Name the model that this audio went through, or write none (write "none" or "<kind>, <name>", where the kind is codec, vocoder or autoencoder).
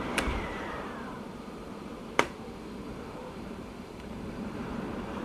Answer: vocoder, BigVGAN v2